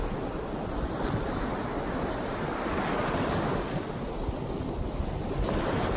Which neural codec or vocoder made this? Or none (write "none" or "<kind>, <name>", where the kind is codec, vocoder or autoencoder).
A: none